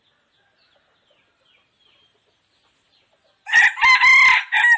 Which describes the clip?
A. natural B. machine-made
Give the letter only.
A